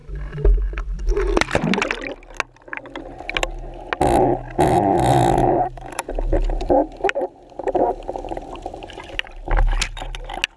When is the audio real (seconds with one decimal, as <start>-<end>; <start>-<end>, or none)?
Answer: 0.0-4.7; 6.8-10.6